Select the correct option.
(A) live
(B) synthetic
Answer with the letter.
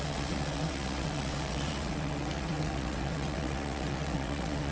B